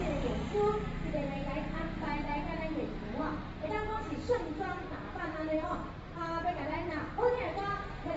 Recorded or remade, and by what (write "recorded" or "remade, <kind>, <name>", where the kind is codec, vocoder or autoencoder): remade, vocoder, BigVGAN v2